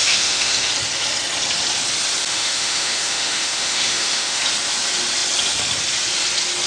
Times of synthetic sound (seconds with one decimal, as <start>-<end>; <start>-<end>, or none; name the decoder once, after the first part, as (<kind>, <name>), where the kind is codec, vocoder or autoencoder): 0.0-0.7 (autoencoder, DAC-VAE); 2.3-4.4

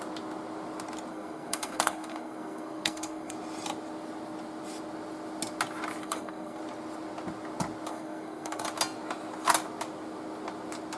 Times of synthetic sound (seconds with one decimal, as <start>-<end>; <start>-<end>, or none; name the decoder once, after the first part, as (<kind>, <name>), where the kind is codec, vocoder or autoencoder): 1.1-3.3 (codec, SNAC); 6.0-6.6; 7.9-8.6

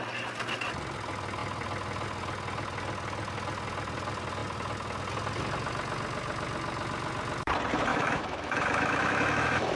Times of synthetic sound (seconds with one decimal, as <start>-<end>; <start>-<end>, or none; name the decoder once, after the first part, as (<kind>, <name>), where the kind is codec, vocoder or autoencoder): 7.9-9.8 (autoencoder, DAC-VAE)

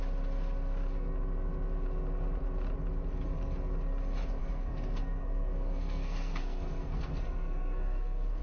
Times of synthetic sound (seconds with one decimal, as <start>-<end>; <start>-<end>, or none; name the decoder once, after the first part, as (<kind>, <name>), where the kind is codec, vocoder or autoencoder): 4.4-8.4 (codec, SNAC)